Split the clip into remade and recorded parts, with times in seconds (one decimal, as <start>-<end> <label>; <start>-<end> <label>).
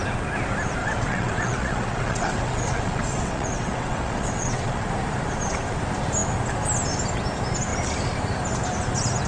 0.0-0.8 recorded; 0.8-4.9 remade; 4.9-9.3 recorded